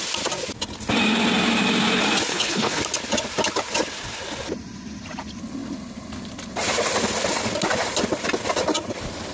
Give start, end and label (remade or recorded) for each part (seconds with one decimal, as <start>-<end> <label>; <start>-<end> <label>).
0.0-2.3 recorded; 2.3-2.8 remade; 2.8-9.3 recorded